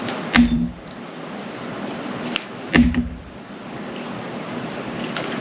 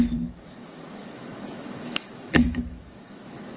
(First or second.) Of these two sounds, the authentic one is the first